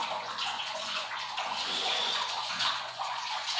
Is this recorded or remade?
remade